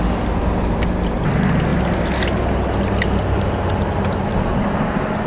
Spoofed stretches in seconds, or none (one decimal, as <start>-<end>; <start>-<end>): none